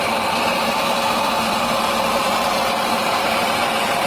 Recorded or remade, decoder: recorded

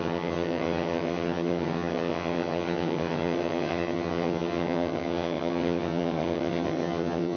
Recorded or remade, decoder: remade, vocoder, HiFi-GAN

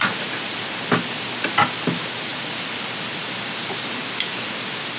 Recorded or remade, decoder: recorded